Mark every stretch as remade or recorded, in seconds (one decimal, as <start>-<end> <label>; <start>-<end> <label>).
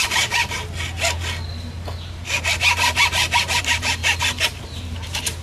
0.0-0.4 remade; 0.4-3.6 recorded; 3.6-4.0 remade; 4.0-4.6 recorded; 4.6-5.4 remade